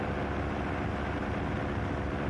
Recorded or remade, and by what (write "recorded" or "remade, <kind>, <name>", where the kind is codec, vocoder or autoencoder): recorded